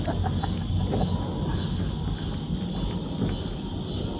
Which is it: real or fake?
real